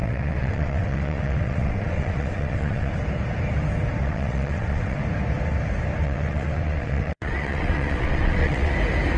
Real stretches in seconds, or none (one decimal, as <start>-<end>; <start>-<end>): 2.9-4.0; 5.0-6.0; 8.7-9.2